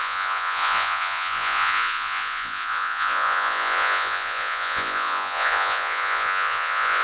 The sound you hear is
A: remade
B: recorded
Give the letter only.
A